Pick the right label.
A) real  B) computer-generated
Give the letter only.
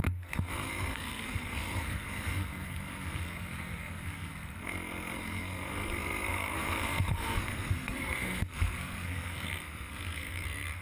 B